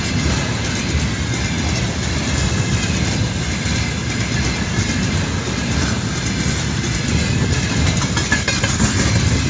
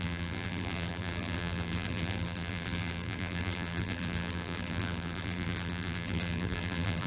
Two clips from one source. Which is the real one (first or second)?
first